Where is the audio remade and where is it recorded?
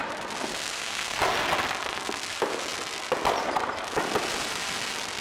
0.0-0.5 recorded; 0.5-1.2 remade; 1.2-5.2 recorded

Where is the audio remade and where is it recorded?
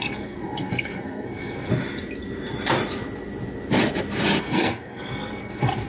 0.0-1.7 remade; 1.7-4.4 recorded; 4.4-5.9 remade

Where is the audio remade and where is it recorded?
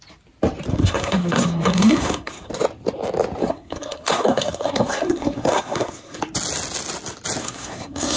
0.0-0.7 recorded; 0.7-2.5 remade; 2.5-3.4 recorded; 3.4-6.2 remade; 6.2-7.4 recorded; 7.4-8.2 remade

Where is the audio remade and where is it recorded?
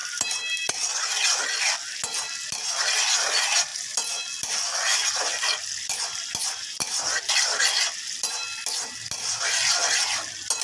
0.0-10.6 recorded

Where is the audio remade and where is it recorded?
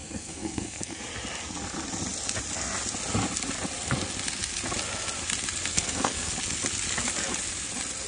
0.0-1.0 remade; 1.0-5.7 recorded; 5.7-6.3 remade; 6.3-8.1 recorded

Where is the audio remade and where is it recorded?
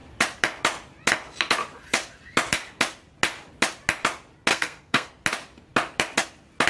0.0-4.5 recorded; 4.5-5.1 remade; 5.1-6.7 recorded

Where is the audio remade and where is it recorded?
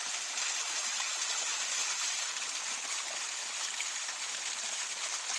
0.0-5.4 recorded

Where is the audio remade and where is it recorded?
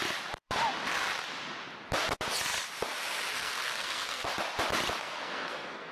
0.0-3.3 recorded; 3.3-4.4 remade; 4.4-5.0 recorded; 5.0-5.9 remade